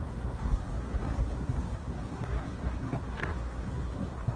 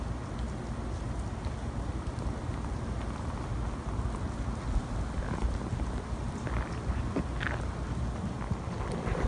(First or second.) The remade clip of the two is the first